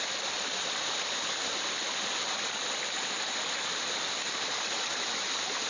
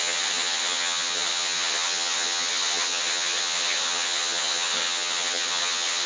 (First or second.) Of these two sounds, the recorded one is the first